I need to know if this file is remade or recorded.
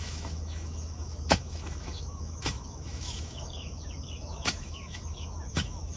remade